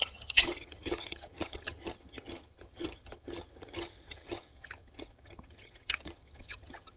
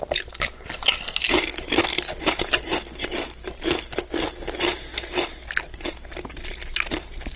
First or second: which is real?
second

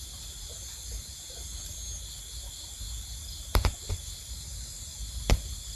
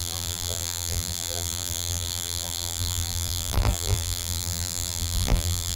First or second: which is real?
first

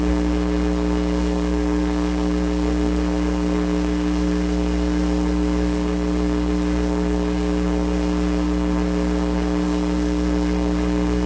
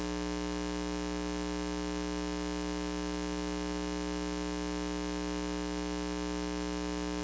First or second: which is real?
second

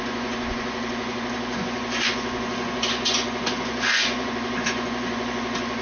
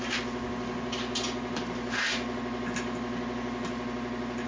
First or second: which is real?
second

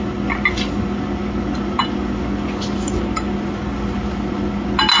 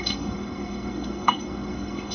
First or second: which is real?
first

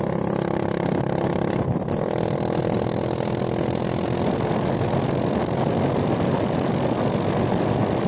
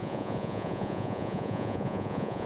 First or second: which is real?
first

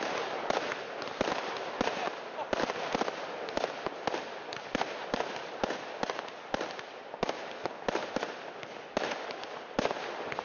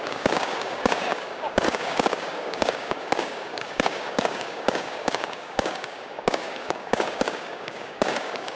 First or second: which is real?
first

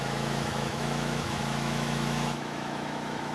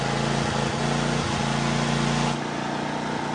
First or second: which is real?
second